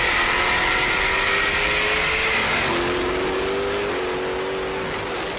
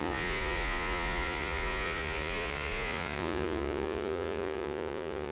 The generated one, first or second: second